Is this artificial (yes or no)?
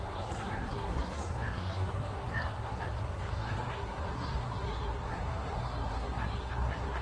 yes